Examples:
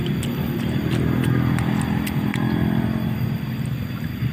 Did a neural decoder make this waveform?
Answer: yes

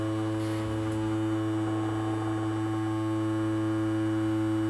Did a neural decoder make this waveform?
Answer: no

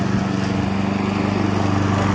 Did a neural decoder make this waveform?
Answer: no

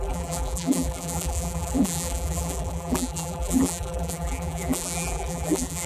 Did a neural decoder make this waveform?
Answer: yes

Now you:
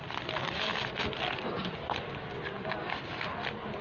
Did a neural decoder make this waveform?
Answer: no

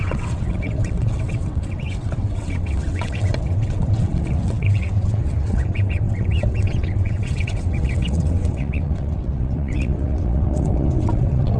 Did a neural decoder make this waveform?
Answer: yes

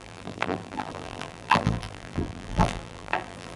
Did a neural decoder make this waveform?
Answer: yes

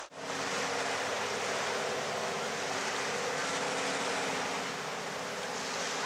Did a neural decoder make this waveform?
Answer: no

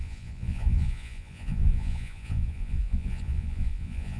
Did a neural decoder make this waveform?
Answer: yes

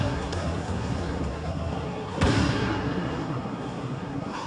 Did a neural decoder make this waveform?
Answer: yes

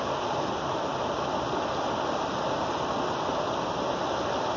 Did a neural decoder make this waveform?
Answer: no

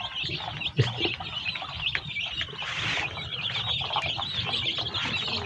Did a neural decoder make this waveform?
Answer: no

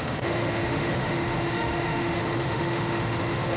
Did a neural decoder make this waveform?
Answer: yes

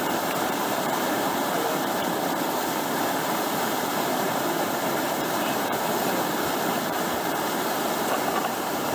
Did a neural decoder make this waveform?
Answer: yes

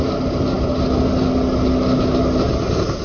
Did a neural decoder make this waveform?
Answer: no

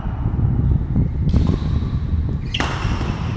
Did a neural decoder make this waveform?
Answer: no